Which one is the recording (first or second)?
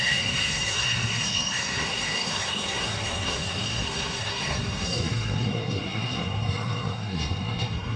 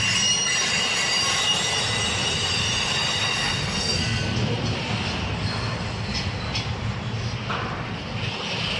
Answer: second